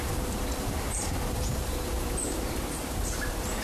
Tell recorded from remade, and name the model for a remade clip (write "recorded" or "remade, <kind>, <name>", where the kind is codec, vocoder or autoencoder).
remade, vocoder, BigVGAN v2